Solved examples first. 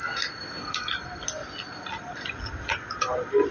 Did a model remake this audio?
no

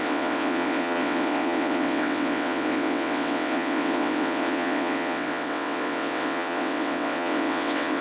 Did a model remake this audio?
yes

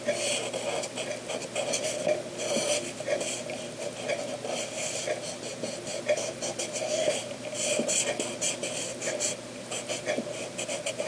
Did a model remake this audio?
no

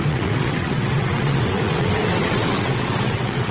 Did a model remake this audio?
yes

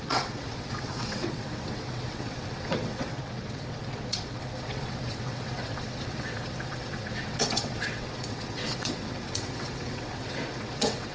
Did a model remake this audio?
yes